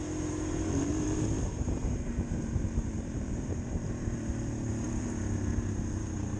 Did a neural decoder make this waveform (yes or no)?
yes